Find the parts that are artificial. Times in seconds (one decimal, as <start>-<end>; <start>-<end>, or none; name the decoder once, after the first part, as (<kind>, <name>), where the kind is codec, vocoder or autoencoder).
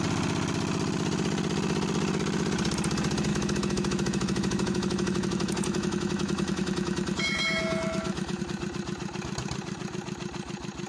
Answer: 3.3-8.4 (autoencoder, DAC-VAE)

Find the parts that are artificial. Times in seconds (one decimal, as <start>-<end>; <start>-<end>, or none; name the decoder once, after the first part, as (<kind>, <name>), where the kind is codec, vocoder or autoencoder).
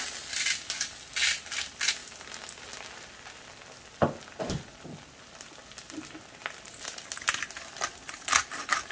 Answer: none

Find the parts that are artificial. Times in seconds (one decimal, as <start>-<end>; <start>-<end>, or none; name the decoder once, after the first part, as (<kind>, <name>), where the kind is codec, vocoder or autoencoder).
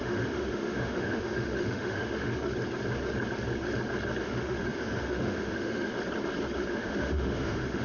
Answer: 0.0-2.3 (autoencoder, DAC-VAE); 4.2-5.9; 6.7-7.8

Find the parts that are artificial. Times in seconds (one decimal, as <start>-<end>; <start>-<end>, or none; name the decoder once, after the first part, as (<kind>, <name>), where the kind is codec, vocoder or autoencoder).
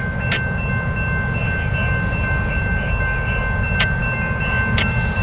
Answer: none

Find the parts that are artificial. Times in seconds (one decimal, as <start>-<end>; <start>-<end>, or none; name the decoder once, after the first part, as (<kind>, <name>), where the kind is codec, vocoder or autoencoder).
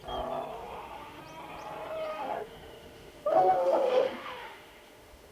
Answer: 0.5-1.2 (autoencoder, DAC-VAE); 2.1-5.3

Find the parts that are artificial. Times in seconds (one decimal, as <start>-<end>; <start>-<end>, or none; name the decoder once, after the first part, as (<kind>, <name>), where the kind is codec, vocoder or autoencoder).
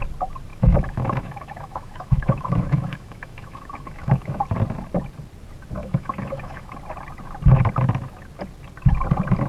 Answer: 0.5-4.4 (autoencoder, DAC-VAE); 5.8-6.7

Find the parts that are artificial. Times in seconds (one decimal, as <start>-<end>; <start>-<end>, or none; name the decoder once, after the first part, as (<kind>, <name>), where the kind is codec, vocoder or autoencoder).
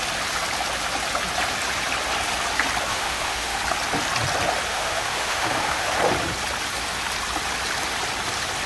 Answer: 2.9-3.6 (autoencoder, DAC-VAE); 4.7-5.9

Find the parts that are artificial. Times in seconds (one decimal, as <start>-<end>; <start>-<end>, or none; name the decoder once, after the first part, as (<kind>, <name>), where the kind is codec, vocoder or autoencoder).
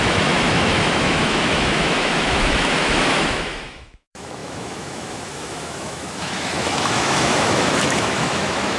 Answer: 0.0-8.8 (autoencoder, DAC-VAE)